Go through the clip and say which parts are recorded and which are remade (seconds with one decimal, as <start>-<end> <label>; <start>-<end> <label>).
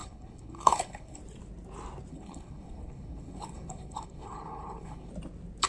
0.0-1.2 remade; 1.2-2.1 recorded; 2.1-5.1 remade; 5.1-5.7 recorded